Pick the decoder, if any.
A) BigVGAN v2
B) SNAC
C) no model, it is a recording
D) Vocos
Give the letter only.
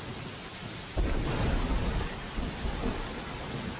C